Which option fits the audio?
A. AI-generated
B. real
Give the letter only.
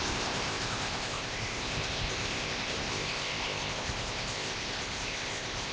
A